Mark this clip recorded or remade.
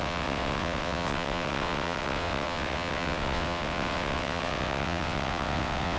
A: remade